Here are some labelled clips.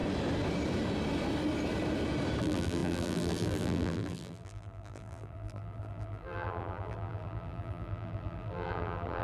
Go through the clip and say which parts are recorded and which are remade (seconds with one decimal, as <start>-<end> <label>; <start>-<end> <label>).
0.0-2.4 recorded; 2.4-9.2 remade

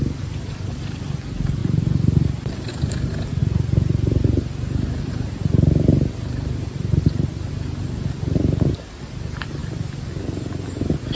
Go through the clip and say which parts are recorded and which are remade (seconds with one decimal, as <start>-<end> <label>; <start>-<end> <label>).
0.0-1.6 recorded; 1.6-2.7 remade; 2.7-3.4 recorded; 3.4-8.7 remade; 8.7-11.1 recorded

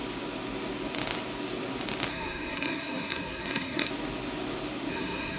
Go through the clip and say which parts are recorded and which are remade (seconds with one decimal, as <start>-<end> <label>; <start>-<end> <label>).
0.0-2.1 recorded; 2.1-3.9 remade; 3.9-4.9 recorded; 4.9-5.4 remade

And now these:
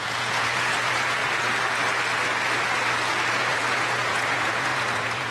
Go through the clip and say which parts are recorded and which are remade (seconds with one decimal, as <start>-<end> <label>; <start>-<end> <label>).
0.0-1.2 remade; 1.2-3.3 recorded; 3.3-5.3 remade

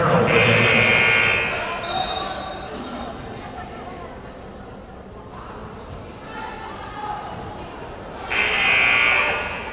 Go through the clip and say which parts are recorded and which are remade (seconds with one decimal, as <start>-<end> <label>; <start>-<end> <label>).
0.0-9.7 recorded

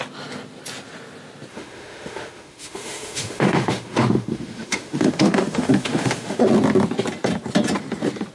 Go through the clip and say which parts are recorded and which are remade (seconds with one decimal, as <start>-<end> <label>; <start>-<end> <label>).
0.0-1.5 recorded; 1.5-6.5 remade; 6.5-8.3 recorded